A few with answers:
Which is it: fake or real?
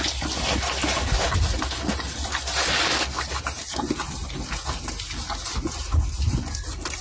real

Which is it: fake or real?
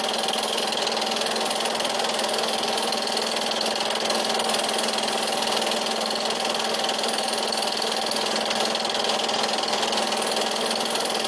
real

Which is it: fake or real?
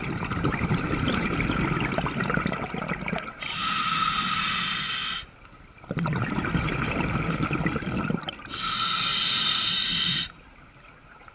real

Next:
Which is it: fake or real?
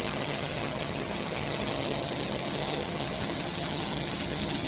fake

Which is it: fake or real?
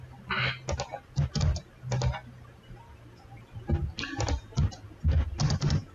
real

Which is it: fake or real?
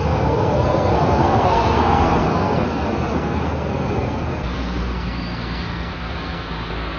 fake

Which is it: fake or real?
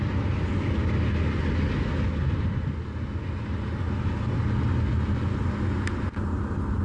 real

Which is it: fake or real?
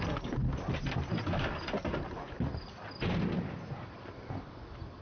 real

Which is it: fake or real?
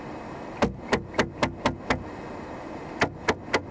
real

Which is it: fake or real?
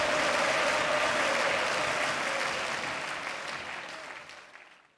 real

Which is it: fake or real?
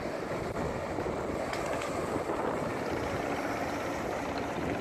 real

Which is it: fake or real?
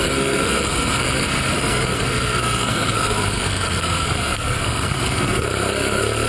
fake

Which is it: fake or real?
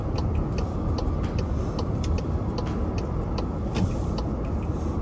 real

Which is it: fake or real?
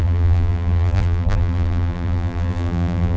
fake